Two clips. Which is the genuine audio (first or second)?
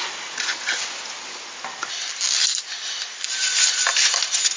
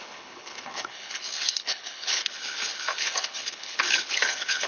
first